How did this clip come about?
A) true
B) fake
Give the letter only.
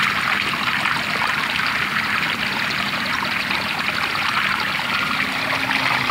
A